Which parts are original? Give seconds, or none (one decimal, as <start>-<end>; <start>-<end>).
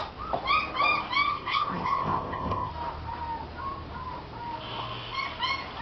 0.0-1.3; 2.7-5.8